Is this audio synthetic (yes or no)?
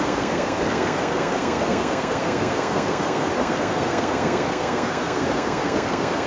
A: yes